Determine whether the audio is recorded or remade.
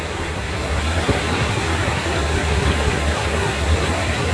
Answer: remade